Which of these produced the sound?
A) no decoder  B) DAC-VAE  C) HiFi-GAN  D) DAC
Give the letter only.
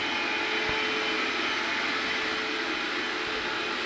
A